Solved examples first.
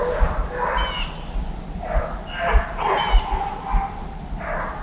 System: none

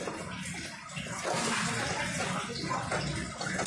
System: none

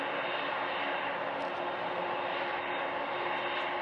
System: none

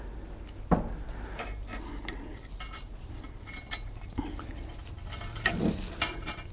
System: none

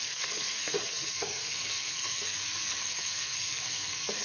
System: codec, SNAC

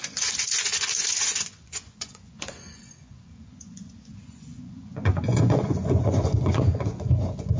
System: vocoder, Vocos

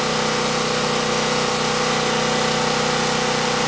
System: none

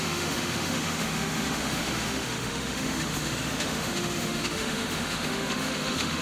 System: autoencoder, DAC-VAE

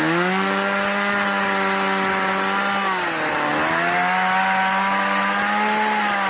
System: none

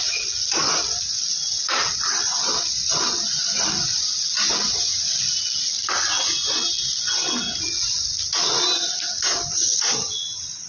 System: none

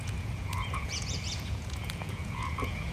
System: vocoder, Vocos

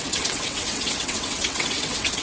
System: vocoder, WaveNeXt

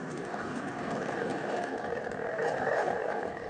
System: codec, DAC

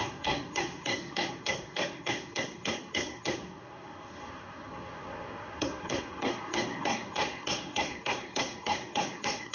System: codec, SNAC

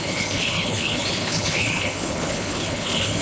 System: codec, HILCodec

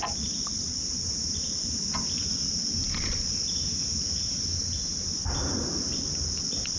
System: none